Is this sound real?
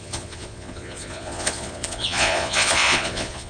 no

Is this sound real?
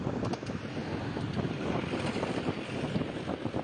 yes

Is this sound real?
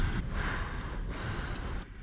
yes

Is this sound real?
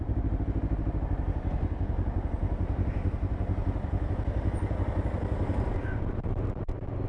yes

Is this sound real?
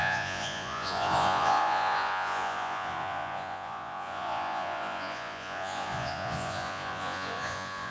no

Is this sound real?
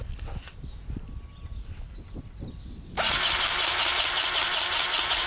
yes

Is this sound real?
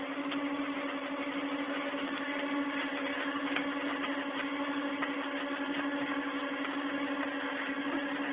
yes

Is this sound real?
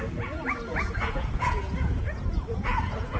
no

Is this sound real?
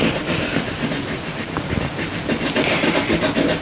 yes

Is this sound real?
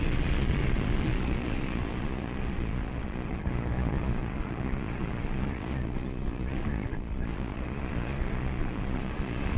no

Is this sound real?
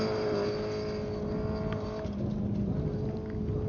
yes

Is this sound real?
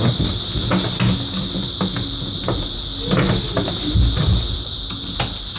yes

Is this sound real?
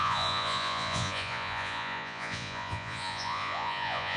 no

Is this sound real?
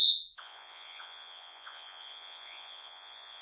no